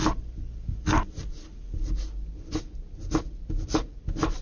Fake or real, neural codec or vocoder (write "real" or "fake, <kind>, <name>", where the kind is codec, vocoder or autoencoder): real